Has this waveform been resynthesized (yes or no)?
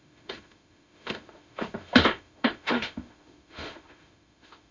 yes